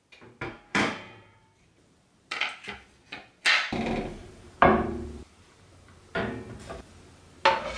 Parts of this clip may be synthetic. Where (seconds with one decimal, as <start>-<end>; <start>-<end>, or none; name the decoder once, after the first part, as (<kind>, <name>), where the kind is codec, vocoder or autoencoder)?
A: 0.7-2.4 (vocoder, BigVGAN v2); 4.2-6.1